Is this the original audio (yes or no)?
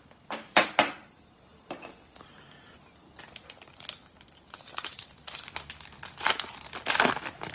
yes